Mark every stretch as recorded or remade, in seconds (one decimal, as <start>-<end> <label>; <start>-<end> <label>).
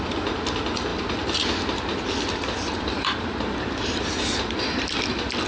0.0-0.9 recorded; 0.9-3.1 remade; 3.1-4.8 recorded; 4.8-5.5 remade